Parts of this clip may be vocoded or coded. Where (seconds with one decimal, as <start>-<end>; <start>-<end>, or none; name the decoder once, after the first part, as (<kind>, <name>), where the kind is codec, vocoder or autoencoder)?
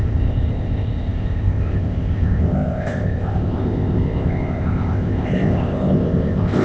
0.0-6.6 (codec, ZipCodec)